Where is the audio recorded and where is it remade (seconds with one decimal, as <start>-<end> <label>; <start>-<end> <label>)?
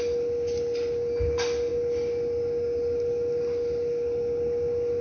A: 0.0-5.0 recorded